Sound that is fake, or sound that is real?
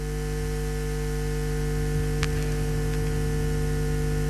fake